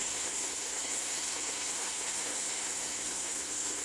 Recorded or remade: remade